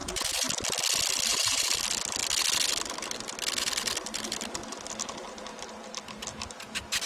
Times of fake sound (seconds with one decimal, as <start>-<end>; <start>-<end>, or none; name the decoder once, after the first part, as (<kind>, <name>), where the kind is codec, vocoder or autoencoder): 1.3-1.8 (vocoder, BigVGAN v2)